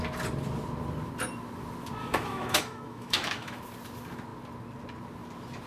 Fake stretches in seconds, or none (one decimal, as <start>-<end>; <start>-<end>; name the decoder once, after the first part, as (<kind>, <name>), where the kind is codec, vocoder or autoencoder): 2.0-3.6 (autoencoder, DAC-VAE)